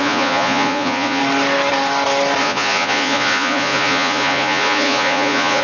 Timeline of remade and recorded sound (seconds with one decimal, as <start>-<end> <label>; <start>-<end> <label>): 0.0-1.2 remade; 1.2-2.4 recorded; 2.4-5.6 remade